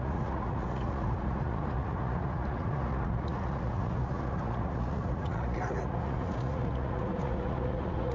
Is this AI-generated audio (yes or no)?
yes